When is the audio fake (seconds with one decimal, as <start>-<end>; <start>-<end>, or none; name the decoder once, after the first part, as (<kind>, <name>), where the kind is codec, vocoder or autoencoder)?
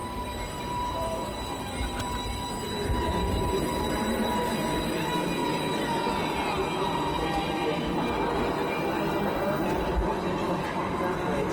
0.0-4.5 (vocoder, BigVGAN v2)